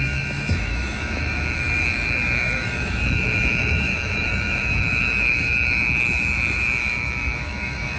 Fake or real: fake